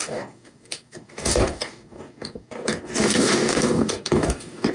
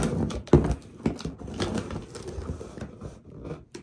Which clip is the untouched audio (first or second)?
second